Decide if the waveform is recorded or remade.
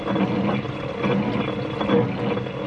recorded